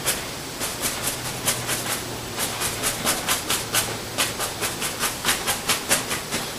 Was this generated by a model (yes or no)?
no